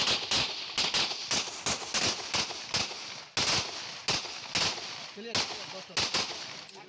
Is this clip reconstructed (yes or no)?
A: no